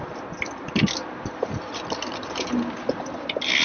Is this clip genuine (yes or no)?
yes